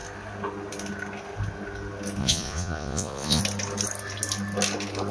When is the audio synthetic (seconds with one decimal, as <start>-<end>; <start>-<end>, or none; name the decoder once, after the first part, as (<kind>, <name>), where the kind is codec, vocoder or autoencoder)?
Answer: 2.2-3.4 (vocoder, Vocos)